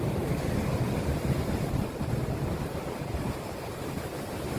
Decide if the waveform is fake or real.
real